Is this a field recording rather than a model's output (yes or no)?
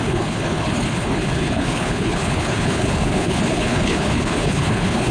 no